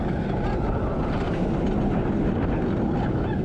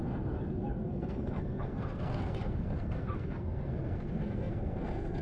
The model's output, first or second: second